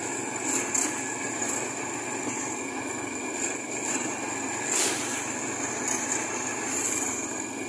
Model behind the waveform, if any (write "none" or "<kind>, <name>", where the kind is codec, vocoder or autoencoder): none